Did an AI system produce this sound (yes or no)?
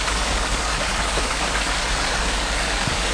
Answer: yes